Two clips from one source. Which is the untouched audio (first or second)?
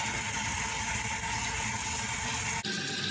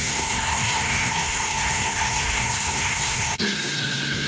first